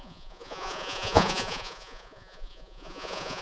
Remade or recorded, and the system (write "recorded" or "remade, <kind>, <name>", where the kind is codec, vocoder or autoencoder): remade, vocoder, Vocos